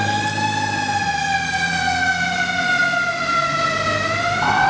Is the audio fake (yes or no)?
no